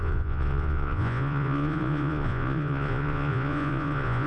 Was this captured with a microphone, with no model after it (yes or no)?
no